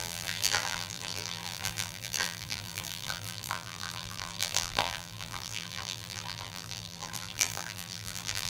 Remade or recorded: remade